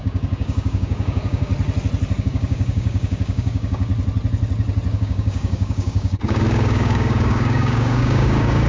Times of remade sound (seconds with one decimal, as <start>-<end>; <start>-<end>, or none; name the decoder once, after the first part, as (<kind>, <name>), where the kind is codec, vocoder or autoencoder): 0.0-1.5 (codec, DAC); 2.2-3.9; 4.9-8.7